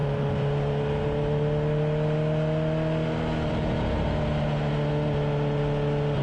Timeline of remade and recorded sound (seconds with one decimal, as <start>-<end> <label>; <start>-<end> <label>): 0.0-6.2 recorded